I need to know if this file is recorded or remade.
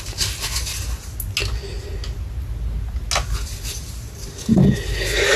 recorded